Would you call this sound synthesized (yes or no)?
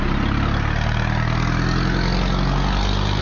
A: no